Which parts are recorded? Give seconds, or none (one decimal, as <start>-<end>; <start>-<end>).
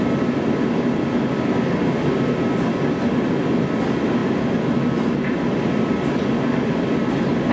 0.0-7.5